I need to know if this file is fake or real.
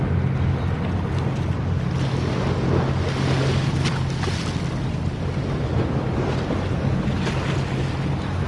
real